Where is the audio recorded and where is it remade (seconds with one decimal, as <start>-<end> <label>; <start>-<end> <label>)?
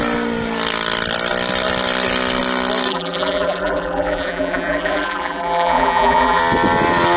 0.0-2.9 recorded; 2.9-6.4 remade; 6.4-7.2 recorded